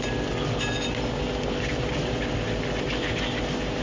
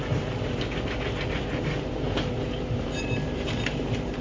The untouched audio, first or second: first